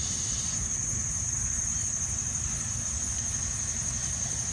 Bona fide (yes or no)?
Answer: no